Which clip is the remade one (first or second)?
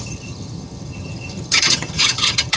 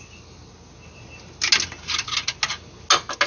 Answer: first